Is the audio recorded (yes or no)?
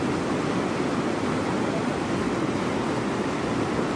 yes